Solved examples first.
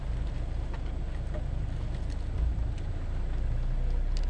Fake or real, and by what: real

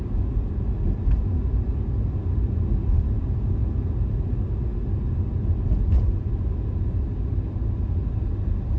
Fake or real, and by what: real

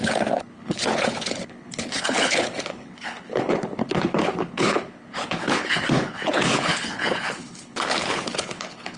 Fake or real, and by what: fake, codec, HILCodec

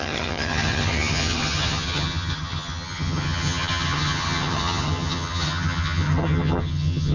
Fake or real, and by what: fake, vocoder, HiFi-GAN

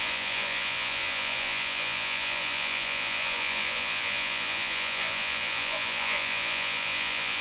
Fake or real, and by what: fake, vocoder, Vocos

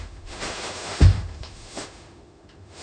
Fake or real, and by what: fake, autoencoder, DAC-VAE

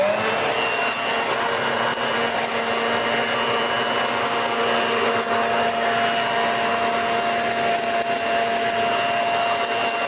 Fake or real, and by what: real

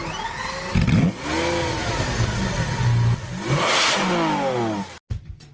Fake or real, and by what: real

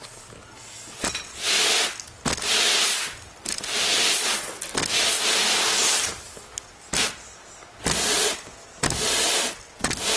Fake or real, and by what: real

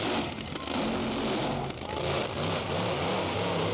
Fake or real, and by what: real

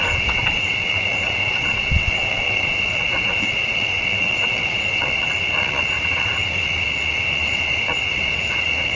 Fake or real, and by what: fake, vocoder, WaveNeXt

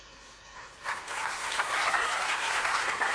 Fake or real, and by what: fake, codec, SNAC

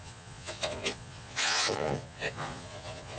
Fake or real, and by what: fake, vocoder, Vocos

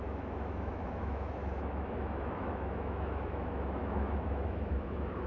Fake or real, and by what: fake, autoencoder, DAC-VAE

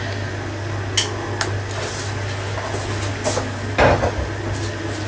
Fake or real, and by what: real